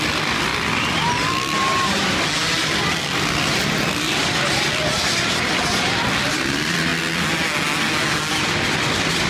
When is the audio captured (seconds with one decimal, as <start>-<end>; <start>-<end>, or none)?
0.5-4.0; 6.9-8.3